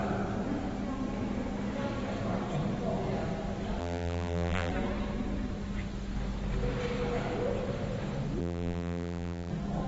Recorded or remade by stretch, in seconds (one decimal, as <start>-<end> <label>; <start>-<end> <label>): 0.0-3.8 recorded; 3.8-4.7 remade; 4.7-8.4 recorded; 8.4-9.5 remade; 9.5-9.9 recorded

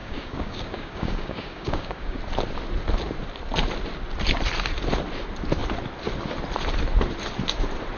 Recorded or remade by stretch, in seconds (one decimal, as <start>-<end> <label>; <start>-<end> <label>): 0.0-2.2 remade; 2.2-8.0 recorded

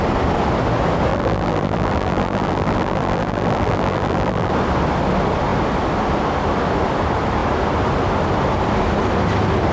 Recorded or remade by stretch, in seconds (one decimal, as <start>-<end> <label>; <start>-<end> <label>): 0.0-1.1 recorded; 1.1-4.5 remade; 4.5-9.7 recorded

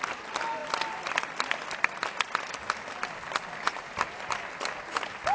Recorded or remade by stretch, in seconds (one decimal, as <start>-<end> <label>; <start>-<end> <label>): 0.0-5.3 recorded

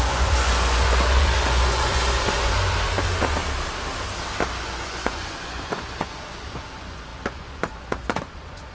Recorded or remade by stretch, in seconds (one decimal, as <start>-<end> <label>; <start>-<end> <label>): 0.0-3.4 remade; 3.4-4.6 recorded; 4.6-8.7 remade

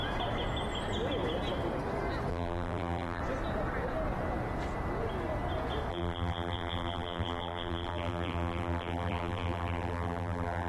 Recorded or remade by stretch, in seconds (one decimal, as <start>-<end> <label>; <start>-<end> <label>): 0.0-2.3 recorded; 2.3-3.2 remade; 3.2-5.9 recorded; 5.9-10.7 remade